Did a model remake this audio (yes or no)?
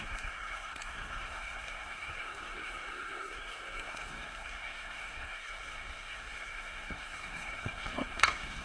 yes